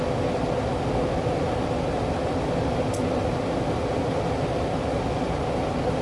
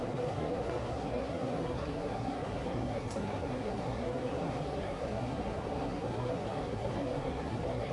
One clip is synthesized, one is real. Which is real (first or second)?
first